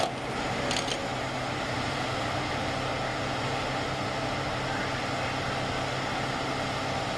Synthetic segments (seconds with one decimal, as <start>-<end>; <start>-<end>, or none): none